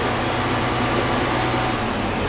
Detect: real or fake real